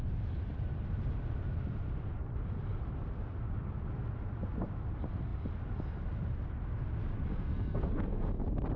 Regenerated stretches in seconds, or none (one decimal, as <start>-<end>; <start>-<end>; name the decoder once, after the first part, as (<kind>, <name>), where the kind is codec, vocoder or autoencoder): 7.3-8.3 (codec, SNAC)